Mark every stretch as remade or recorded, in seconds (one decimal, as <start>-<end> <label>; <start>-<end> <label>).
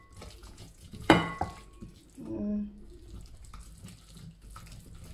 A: 0.0-0.4 recorded; 0.4-1.4 remade; 1.4-5.1 recorded